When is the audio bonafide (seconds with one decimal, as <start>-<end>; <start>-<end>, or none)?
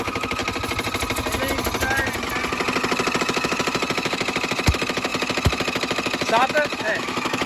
0.4-3.2